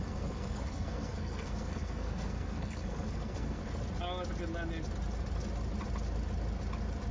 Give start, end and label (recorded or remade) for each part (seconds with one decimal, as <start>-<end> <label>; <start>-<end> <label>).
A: 0.0-3.6 remade; 3.6-7.1 recorded